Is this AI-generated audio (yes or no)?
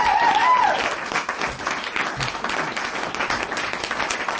no